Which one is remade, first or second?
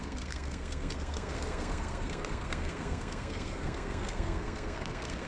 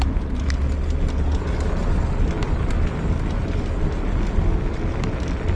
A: first